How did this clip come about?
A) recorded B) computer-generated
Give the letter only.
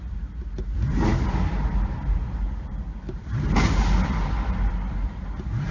A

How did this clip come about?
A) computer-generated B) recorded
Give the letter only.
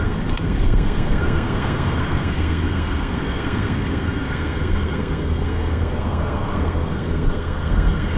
A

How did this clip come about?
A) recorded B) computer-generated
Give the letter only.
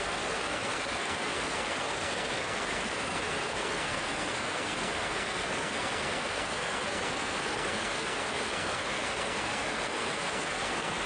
B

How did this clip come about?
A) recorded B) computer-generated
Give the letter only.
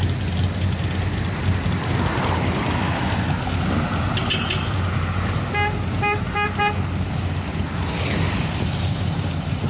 A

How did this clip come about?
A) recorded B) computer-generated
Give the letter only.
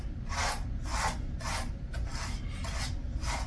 A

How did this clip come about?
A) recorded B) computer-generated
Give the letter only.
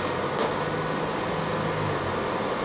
A